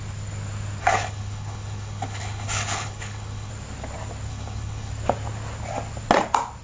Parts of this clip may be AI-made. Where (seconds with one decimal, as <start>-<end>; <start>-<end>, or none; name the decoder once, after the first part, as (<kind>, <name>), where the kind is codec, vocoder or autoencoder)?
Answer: 0.8-3.5 (codec, HILCodec); 4.3-4.9